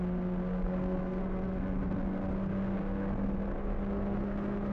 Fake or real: fake